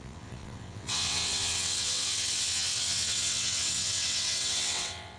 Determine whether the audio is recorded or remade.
remade